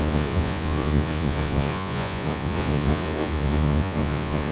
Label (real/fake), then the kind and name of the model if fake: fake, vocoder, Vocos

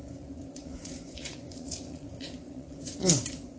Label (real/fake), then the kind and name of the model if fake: fake, vocoder, Vocos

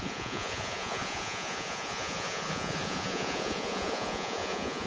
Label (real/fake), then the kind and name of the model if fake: fake, vocoder, Vocos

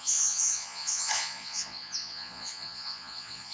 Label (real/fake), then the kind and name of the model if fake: fake, vocoder, Vocos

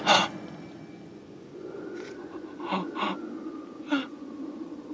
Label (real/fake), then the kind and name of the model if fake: fake, vocoder, Vocos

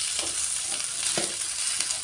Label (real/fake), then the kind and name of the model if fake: real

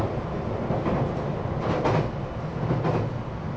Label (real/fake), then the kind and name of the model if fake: real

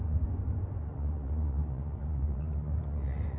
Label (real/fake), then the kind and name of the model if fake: fake, vocoder, Vocos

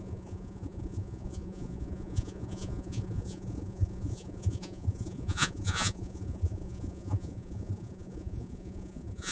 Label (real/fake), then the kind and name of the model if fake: fake, vocoder, Vocos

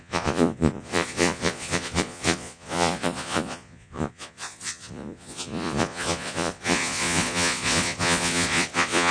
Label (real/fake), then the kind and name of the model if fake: fake, vocoder, Vocos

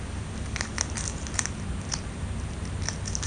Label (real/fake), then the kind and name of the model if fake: real